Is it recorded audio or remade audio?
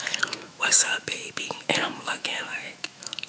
remade